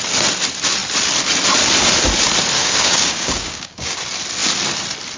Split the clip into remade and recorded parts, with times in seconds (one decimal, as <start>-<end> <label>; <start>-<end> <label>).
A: 0.0-2.6 recorded; 2.6-4.0 remade; 4.0-5.2 recorded